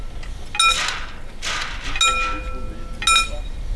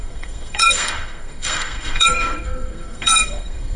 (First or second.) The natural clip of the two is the first